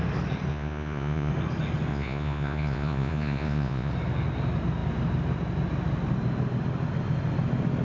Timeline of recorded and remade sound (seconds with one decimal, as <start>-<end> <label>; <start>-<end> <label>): 0.0-0.5 recorded; 0.5-1.3 remade; 1.3-1.9 recorded; 1.9-3.9 remade; 3.9-7.8 recorded